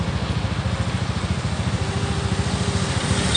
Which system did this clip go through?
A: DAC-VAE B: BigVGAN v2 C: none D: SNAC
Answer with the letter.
C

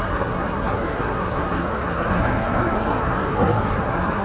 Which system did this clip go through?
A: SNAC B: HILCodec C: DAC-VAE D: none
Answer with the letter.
A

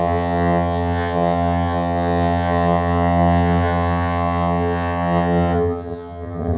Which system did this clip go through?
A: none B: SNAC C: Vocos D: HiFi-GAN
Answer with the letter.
D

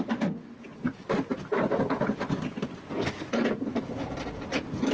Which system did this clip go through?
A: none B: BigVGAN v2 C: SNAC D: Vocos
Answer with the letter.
A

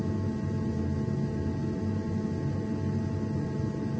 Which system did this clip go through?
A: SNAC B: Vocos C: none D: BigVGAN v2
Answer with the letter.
C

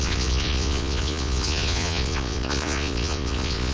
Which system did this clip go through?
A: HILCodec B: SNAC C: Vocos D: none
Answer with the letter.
C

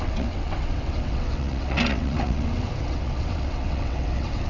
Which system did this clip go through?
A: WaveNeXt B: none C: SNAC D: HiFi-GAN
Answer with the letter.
A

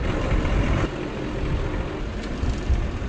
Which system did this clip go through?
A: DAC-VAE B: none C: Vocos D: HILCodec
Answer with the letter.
B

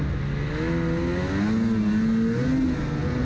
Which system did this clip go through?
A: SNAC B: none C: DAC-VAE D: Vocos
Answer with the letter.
B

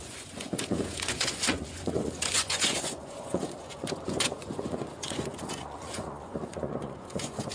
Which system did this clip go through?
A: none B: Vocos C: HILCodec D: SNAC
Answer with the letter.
B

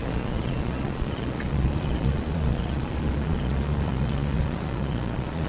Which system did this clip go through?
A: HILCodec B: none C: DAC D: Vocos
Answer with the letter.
D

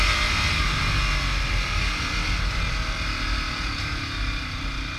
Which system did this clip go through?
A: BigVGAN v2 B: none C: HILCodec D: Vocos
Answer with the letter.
B